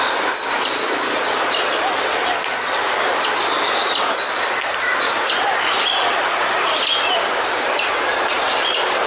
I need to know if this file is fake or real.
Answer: real